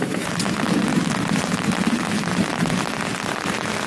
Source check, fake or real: real